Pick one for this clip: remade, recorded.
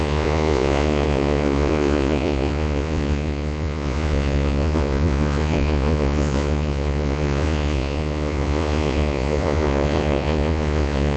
remade